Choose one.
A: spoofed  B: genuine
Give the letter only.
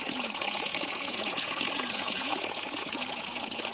A